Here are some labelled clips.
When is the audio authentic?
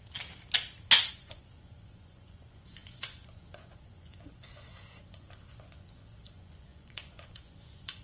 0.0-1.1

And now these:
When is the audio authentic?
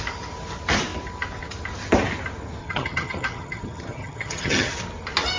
0.0-2.6; 4.7-5.4